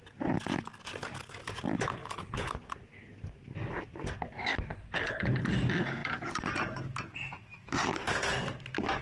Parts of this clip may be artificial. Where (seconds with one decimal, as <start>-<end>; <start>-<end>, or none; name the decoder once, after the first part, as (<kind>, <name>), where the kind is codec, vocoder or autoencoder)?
2.0-2.5 (codec, HILCodec); 4.7-5.4